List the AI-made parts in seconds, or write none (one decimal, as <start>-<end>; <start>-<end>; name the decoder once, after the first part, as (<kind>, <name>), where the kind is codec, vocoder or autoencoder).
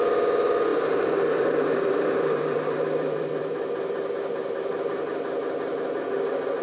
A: 0.7-4.7 (vocoder, BigVGAN v2)